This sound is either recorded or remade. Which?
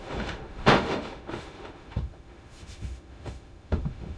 remade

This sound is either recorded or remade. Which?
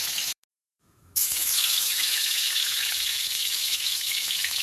remade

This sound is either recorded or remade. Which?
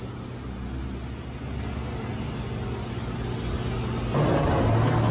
recorded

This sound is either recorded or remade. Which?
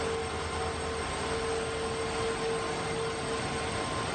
recorded